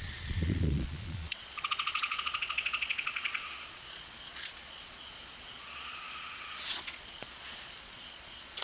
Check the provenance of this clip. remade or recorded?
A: remade